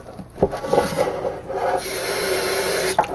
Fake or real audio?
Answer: real